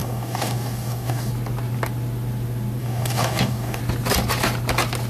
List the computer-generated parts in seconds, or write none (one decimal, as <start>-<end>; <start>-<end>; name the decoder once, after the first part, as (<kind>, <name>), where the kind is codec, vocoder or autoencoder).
0.0-1.3 (codec, DAC); 2.8-3.8